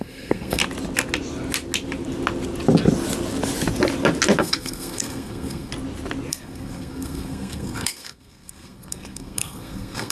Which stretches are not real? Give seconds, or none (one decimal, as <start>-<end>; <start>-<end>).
0.0-0.6; 4.4-5.7; 6.3-10.1